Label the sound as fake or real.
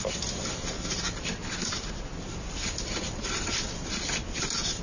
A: real